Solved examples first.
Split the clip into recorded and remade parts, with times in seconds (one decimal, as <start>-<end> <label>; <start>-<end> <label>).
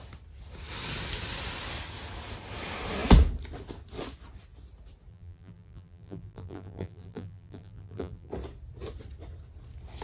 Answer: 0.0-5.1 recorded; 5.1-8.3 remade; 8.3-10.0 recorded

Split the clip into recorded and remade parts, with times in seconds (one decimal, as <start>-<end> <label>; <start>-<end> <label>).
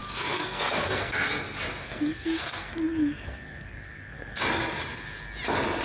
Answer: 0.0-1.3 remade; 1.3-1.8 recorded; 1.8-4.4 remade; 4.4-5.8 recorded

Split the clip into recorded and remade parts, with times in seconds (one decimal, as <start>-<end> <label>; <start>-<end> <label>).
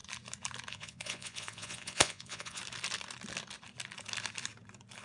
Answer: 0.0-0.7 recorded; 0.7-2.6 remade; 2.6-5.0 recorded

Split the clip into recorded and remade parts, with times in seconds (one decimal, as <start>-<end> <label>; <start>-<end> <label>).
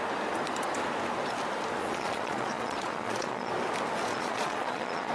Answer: 0.0-1.8 recorded; 1.8-3.5 remade; 3.5-4.1 recorded; 4.1-5.1 remade